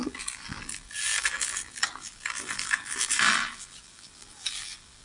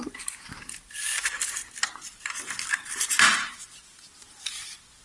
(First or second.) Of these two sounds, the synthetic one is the first